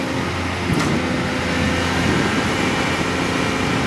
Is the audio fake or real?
real